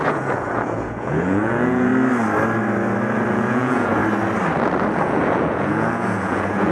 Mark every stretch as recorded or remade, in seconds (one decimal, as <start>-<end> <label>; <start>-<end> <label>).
0.0-1.9 remade; 1.9-3.3 recorded; 3.3-4.0 remade; 4.0-5.0 recorded; 5.0-6.7 remade